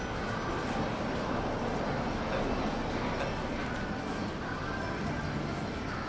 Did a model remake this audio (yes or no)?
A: no